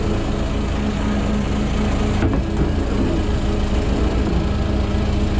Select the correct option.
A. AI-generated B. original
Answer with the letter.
B